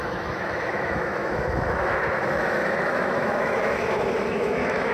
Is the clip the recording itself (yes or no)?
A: no